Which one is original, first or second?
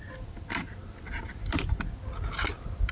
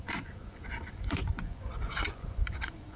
first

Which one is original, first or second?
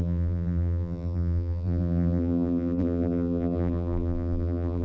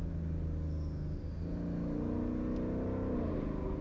second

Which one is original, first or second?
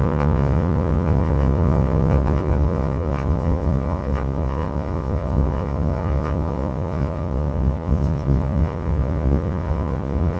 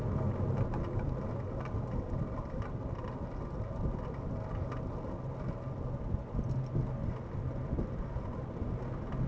second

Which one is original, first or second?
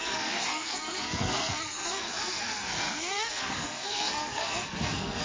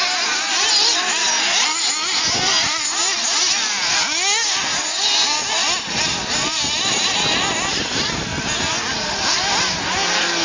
second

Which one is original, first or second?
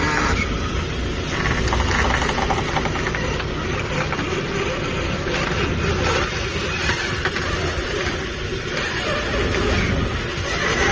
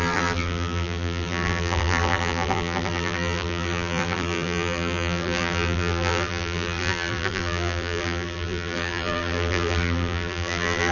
first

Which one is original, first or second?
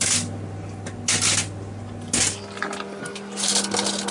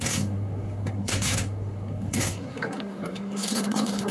first